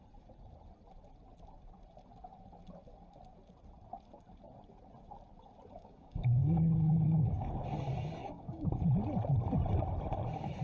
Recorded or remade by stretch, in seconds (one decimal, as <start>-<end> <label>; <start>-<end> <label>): 0.0-5.8 recorded; 5.8-7.5 remade; 7.5-8.2 recorded; 8.2-8.7 remade; 8.7-10.6 recorded